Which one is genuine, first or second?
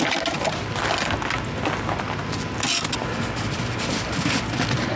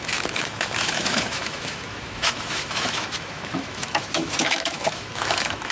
first